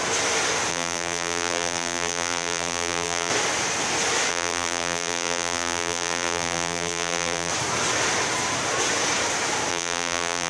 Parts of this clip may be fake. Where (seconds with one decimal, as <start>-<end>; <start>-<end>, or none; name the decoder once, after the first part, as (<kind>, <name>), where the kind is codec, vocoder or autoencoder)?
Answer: 0.7-3.3 (vocoder, BigVGAN v2); 4.3-7.5; 9.7-10.5